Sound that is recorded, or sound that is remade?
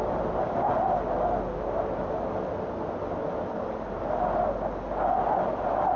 recorded